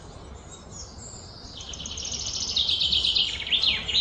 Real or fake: real